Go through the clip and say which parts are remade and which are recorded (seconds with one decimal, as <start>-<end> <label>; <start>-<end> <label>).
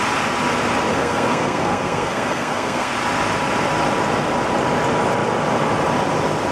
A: 0.0-0.9 recorded; 0.9-2.9 remade; 2.9-6.5 recorded